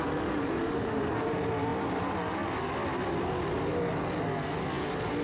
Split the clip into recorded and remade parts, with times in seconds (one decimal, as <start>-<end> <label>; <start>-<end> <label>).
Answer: 0.0-0.6 recorded; 0.6-1.1 remade; 1.1-5.2 recorded